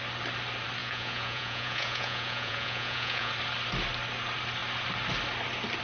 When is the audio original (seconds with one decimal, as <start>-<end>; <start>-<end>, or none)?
0.0-0.8; 3.3-5.8